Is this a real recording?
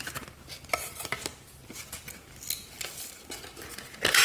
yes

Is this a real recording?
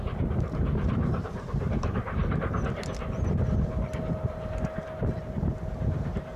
no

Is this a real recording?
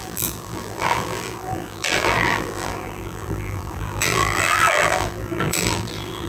no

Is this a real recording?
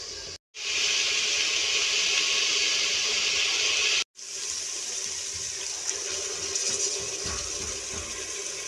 yes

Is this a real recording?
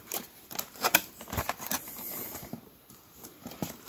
no